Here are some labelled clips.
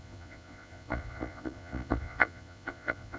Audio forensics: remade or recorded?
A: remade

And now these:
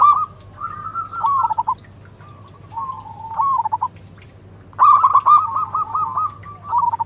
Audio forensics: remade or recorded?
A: recorded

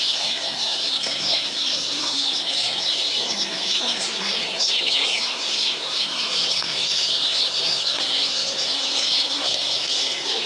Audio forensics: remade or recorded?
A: remade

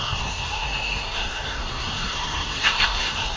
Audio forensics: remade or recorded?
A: remade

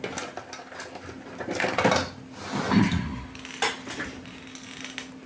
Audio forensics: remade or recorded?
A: recorded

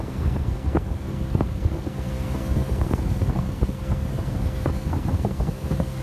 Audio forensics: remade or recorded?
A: remade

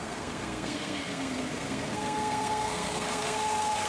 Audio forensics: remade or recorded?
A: remade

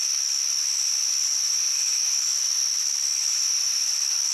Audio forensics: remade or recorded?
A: recorded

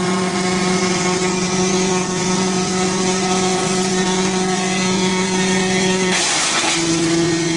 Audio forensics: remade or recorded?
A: remade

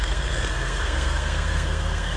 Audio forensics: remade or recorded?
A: remade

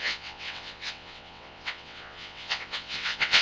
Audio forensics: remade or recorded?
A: remade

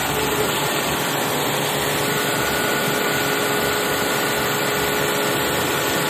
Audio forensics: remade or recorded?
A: recorded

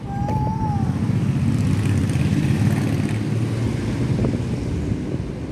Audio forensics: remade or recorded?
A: recorded